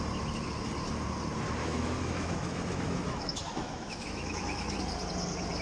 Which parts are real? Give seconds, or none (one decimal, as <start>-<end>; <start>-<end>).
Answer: 0.0-1.6; 4.8-5.6